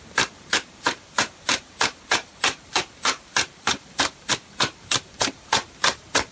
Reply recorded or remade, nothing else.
remade